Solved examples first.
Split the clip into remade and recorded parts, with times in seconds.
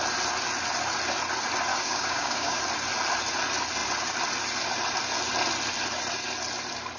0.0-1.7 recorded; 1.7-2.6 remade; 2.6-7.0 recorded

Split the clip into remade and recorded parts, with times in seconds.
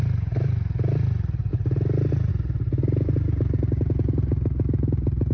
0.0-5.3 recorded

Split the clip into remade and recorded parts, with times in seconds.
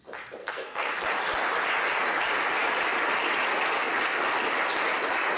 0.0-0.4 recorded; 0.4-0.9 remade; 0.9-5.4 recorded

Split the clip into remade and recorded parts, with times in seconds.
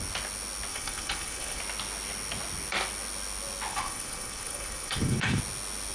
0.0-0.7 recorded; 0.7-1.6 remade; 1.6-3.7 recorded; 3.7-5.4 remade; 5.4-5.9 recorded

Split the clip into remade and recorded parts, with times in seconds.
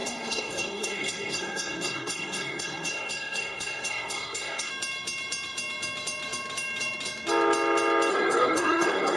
0.0-4.7 remade; 4.7-8.1 recorded; 8.1-9.2 remade